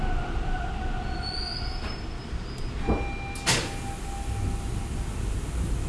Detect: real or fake real